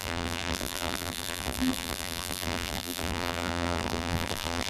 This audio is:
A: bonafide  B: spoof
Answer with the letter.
B